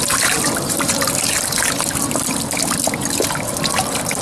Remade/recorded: recorded